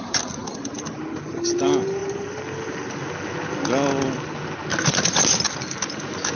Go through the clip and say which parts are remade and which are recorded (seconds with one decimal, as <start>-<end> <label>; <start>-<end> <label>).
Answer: 0.0-4.7 recorded; 4.7-5.2 remade; 5.2-6.3 recorded